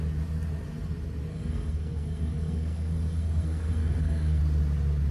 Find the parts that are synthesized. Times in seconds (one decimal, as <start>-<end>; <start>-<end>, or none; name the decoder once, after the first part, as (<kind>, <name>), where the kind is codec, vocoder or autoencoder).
1.3-4.4 (codec, SNAC)